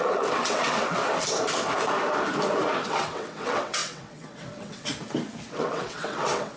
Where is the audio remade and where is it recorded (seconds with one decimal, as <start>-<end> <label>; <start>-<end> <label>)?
0.0-1.0 remade; 1.0-2.9 recorded; 2.9-4.9 remade; 4.9-5.5 recorded; 5.5-6.6 remade